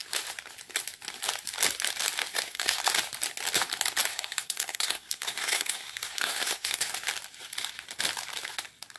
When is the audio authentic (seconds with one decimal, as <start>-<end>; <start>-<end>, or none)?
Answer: 0.0-2.3; 2.8-4.1; 6.9-9.0